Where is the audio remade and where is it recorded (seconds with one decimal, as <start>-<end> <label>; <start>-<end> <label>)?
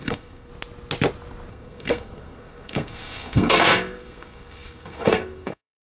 0.0-0.5 remade; 0.5-1.5 recorded; 1.5-5.8 remade